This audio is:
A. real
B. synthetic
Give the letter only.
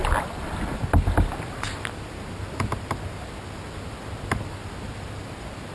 A